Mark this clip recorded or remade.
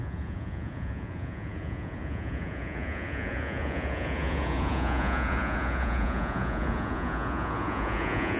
remade